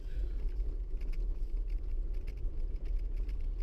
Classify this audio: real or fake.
real